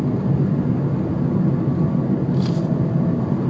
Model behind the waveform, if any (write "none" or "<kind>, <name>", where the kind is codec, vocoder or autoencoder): none